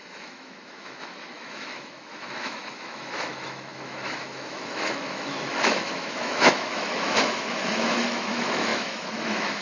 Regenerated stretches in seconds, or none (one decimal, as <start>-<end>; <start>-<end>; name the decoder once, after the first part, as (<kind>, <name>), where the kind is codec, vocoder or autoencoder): 0.0-9.6 (autoencoder, DAC-VAE)